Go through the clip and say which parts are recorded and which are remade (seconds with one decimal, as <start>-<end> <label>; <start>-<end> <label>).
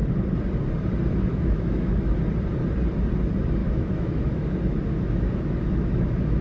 0.0-1.3 recorded; 1.3-2.2 remade; 2.2-3.6 recorded; 3.6-6.4 remade